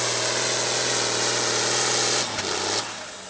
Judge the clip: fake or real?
real